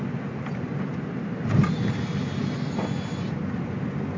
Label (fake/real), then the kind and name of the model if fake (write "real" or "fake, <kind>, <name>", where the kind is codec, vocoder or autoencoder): real